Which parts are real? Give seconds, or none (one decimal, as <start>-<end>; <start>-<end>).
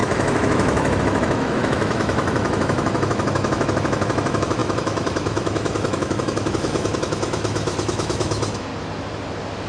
8.7-9.7